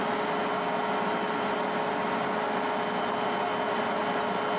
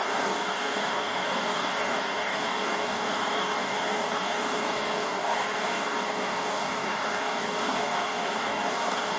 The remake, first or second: second